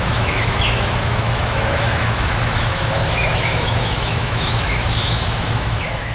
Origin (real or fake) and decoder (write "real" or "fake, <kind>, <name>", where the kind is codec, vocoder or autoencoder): fake, autoencoder, DAC-VAE